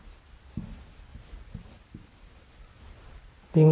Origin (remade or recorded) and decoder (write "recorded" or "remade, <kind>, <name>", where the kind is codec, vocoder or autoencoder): recorded